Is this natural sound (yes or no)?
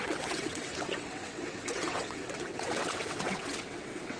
no